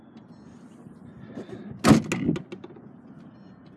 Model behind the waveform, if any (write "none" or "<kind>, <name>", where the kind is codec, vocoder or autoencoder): none